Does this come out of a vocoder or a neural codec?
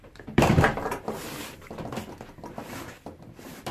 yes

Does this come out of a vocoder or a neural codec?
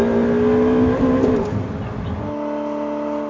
no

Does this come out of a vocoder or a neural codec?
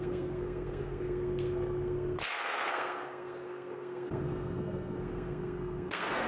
yes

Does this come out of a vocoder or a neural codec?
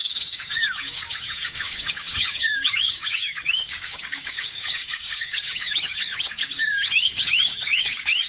yes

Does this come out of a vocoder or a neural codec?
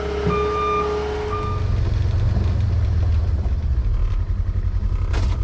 no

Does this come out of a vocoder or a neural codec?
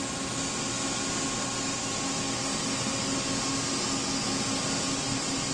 no